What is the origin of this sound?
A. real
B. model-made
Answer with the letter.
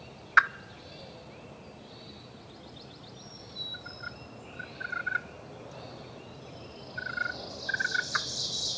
A